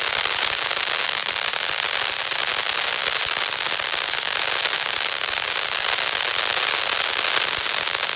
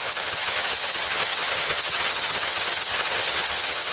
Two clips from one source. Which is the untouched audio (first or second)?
first